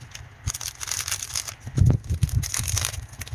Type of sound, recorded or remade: recorded